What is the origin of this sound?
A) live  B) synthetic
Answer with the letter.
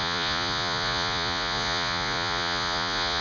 B